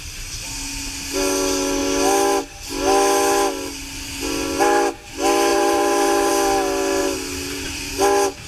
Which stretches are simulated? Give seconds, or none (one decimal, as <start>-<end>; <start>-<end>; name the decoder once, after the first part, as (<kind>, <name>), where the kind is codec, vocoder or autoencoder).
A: 5.5-6.3 (vocoder, BigVGAN v2); 7.0-7.9